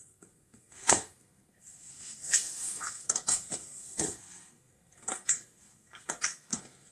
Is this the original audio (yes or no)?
no